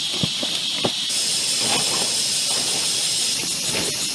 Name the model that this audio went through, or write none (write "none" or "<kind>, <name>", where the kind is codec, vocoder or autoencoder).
none